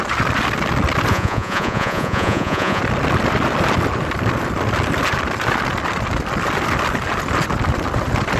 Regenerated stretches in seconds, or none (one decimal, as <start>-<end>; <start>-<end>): 1.1-2.8